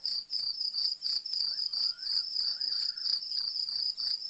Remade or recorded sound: remade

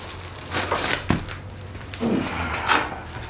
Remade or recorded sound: recorded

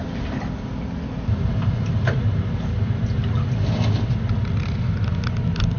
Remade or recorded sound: recorded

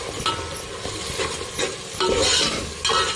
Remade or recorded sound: recorded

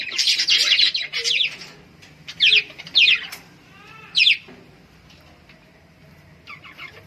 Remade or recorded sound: recorded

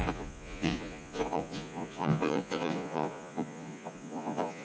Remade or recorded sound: remade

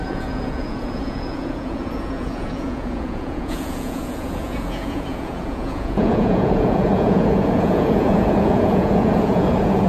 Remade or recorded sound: remade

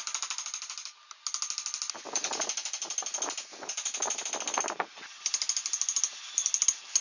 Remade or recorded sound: recorded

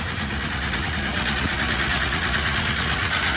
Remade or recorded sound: remade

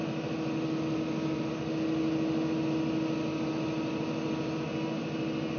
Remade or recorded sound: recorded